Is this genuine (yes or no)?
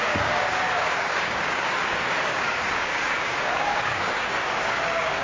no